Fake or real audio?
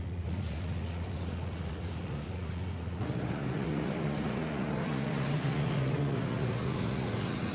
fake